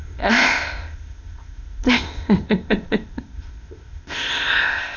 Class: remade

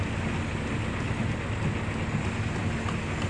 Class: recorded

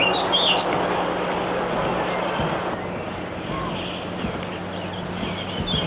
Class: recorded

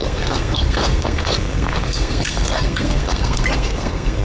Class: remade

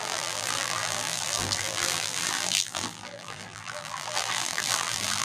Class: remade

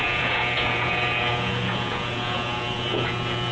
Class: remade